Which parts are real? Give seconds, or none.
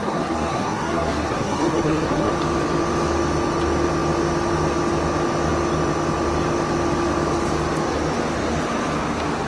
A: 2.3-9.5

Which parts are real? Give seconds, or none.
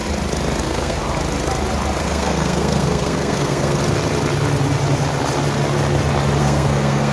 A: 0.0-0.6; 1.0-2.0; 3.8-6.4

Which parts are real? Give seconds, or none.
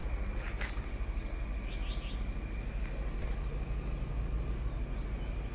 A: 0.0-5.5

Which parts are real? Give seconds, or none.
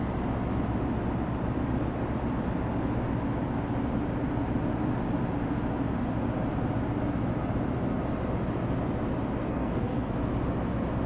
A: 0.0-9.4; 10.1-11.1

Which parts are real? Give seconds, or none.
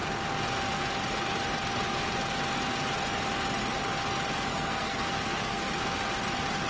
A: 0.0-4.5; 5.7-6.7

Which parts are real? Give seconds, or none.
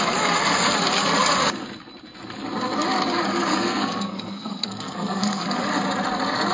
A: 0.0-3.5; 5.6-6.5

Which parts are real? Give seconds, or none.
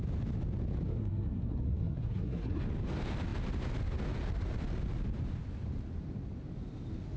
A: 0.0-0.9; 2.6-7.2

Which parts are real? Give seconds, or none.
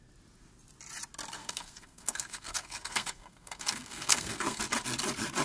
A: 0.0-1.4; 4.6-5.4